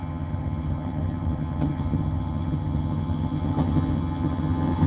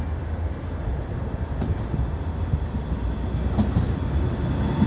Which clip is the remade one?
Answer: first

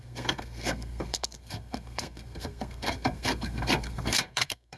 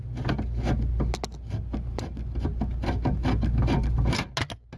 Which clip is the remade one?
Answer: first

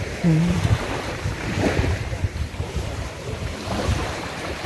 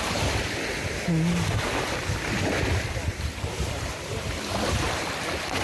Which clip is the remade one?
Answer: first